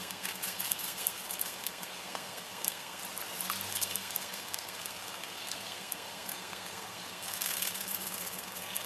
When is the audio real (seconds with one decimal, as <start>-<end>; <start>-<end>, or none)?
3.0-3.7